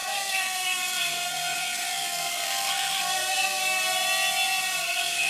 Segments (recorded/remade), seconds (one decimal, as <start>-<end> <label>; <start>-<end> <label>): 0.0-3.6 remade; 3.6-4.8 recorded; 4.8-5.3 remade